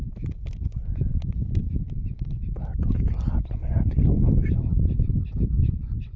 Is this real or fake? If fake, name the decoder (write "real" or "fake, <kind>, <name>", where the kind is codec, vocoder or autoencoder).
real